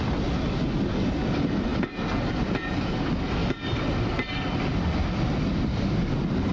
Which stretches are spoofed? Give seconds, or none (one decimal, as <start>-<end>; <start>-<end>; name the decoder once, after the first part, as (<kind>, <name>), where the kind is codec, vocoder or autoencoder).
none